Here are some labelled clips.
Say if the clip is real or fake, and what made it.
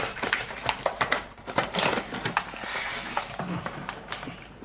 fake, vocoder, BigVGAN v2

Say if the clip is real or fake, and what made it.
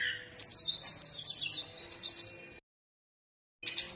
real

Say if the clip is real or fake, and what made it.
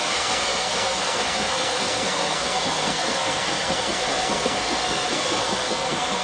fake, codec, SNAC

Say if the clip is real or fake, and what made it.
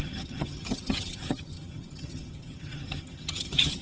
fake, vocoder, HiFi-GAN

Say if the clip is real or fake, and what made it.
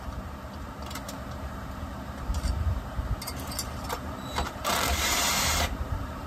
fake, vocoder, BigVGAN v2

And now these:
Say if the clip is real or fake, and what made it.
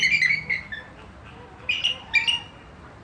real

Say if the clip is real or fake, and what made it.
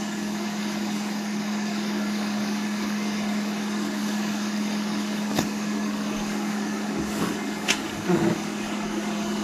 fake, codec, DAC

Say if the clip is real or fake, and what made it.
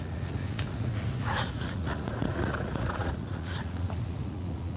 fake, vocoder, Vocos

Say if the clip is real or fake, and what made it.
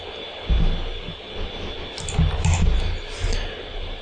real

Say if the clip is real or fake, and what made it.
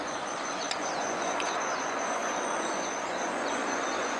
fake, vocoder, Vocos